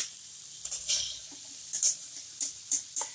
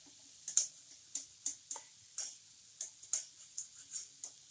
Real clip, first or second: second